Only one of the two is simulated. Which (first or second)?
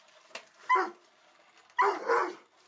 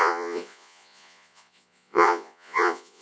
second